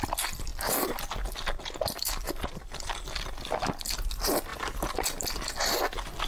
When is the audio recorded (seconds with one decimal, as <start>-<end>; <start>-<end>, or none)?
0.0-6.3